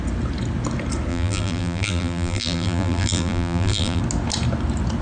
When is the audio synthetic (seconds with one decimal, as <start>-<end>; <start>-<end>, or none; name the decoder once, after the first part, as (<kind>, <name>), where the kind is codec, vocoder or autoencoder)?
1.1-4.0 (vocoder, BigVGAN v2)